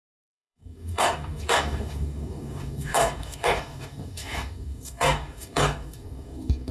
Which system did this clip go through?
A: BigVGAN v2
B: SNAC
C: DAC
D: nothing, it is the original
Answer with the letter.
C